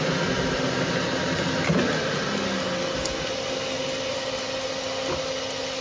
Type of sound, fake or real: real